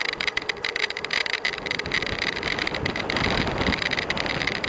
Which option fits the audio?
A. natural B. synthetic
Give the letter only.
A